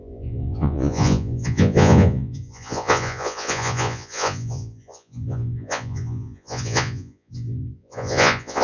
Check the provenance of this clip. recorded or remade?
remade